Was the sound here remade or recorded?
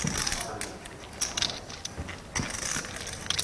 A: recorded